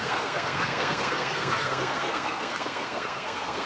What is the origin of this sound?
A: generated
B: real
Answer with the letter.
A